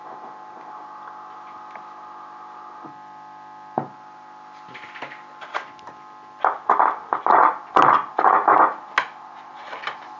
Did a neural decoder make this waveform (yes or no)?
no